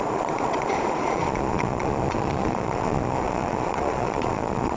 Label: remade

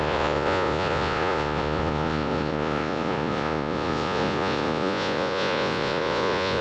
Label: remade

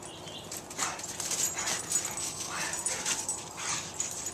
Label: recorded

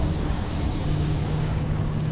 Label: remade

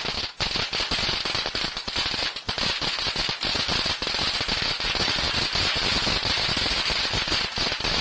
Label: recorded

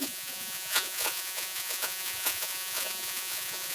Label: remade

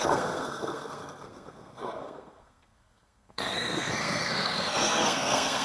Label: remade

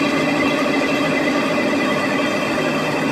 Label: recorded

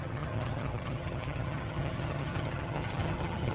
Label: remade